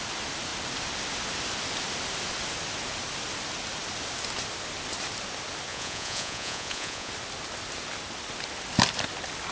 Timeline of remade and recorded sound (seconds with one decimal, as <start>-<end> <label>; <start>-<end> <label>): 0.0-5.7 recorded; 5.7-7.1 remade; 7.1-9.5 recorded